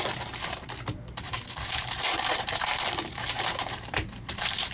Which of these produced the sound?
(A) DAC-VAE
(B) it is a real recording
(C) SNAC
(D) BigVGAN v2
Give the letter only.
D